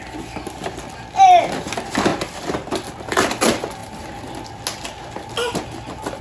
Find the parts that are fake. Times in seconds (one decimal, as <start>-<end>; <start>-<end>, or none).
none